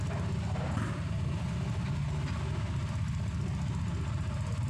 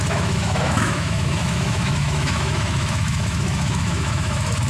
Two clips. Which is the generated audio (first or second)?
second